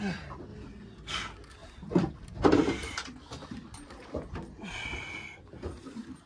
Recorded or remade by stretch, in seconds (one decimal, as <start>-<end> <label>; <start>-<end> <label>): 0.0-1.6 recorded; 1.6-4.1 remade; 4.1-6.3 recorded